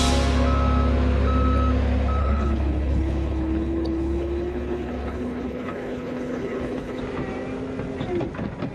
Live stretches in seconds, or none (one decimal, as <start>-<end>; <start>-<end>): 0.0-2.2; 7.0-8.7